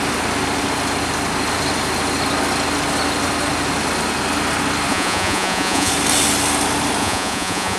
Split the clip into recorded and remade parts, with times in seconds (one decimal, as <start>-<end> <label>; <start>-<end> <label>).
0.0-4.9 recorded; 4.9-5.9 remade; 5.9-7.0 recorded; 7.0-7.8 remade